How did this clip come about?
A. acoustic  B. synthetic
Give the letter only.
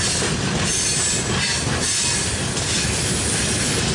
A